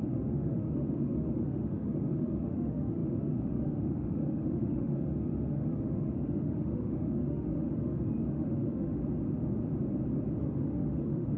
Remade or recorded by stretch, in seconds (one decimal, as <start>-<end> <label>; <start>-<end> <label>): 0.0-9.0 remade; 9.0-10.4 recorded; 10.4-11.4 remade